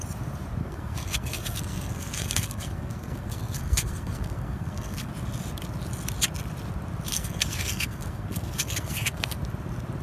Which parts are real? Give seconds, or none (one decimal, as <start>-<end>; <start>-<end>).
0.0-0.6; 5.1-7.1; 9.4-10.0